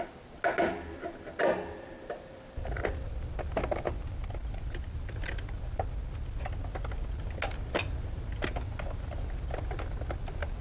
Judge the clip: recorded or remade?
recorded